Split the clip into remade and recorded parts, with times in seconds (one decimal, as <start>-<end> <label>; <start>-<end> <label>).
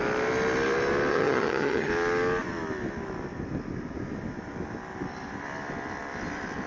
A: 0.0-1.1 recorded; 1.1-1.9 remade; 1.9-6.7 recorded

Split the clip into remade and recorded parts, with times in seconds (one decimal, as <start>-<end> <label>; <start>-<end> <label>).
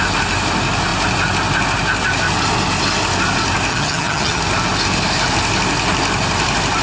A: 0.0-3.7 recorded; 3.7-4.4 remade; 4.4-6.8 recorded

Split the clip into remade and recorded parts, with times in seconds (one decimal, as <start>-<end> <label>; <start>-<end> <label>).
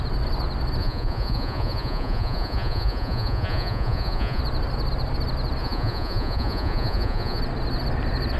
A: 0.0-0.8 recorded; 0.8-4.4 remade; 4.4-5.6 recorded; 5.6-7.4 remade; 7.4-8.4 recorded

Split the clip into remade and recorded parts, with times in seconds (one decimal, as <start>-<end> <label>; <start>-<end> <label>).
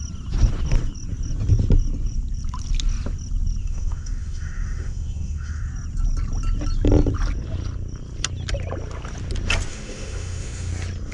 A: 0.0-3.6 recorded; 3.6-5.7 remade; 5.7-9.7 recorded; 9.7-10.7 remade; 10.7-11.1 recorded